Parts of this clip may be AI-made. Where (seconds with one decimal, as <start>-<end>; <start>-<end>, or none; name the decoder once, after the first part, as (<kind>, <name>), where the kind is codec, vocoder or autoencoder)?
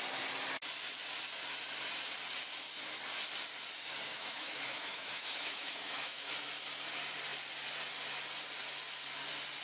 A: 4.1-6.3 (autoencoder, DAC-VAE)